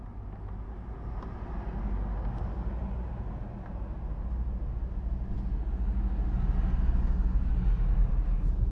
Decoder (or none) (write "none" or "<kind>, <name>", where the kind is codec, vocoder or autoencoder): none